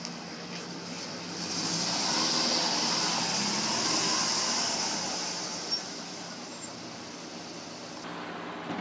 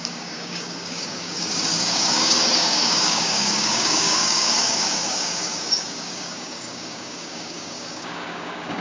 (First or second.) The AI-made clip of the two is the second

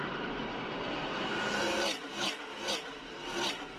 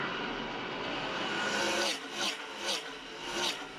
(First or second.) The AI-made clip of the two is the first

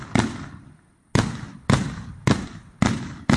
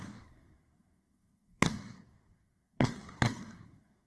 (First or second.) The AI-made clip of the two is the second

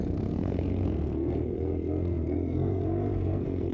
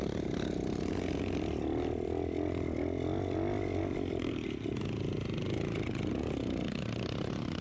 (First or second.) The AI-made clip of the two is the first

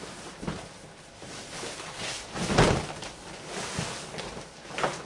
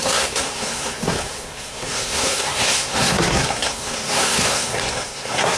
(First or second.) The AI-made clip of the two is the second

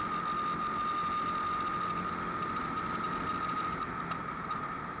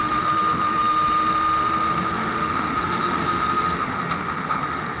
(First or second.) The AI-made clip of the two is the second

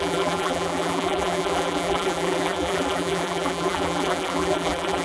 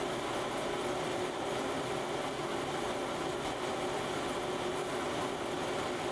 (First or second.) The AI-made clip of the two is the first